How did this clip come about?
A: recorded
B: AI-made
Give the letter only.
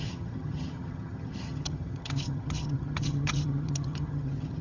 B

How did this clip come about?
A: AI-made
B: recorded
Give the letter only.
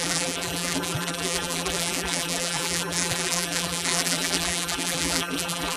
A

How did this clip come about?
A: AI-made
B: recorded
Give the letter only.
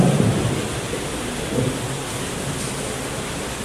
B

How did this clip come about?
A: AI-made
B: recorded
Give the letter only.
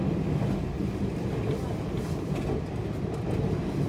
B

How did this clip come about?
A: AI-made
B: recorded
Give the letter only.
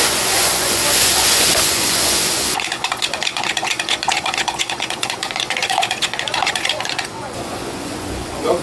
A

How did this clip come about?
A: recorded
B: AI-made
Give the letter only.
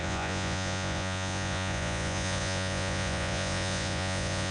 B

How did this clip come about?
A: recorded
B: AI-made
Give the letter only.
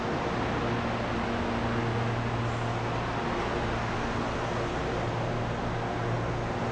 A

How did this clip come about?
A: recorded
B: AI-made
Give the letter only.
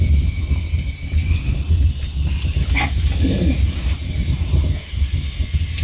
A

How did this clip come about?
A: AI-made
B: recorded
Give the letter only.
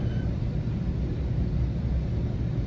B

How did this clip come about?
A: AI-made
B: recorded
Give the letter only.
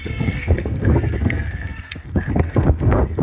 A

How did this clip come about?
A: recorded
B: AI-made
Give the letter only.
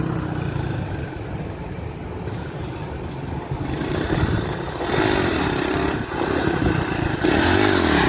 A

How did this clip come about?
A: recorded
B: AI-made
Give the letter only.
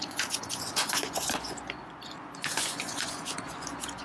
B